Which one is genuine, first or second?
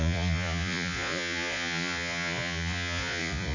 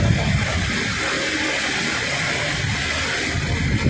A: second